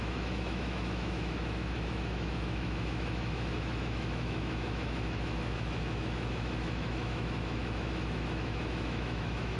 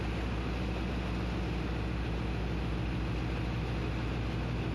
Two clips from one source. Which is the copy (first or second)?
first